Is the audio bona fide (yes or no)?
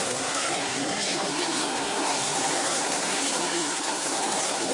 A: no